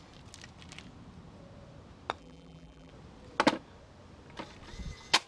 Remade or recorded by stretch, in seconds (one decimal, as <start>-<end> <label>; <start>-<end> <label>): 0.0-2.2 recorded; 2.2-2.9 remade; 2.9-5.3 recorded